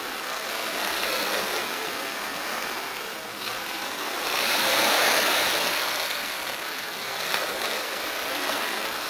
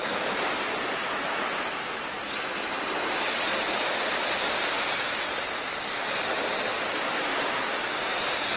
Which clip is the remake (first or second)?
first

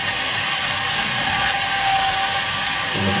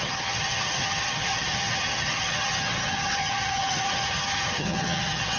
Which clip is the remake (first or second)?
second